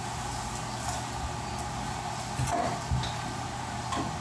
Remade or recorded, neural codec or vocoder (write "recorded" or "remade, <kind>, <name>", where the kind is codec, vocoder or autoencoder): recorded